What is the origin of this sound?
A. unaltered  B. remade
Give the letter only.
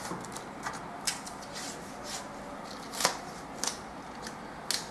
A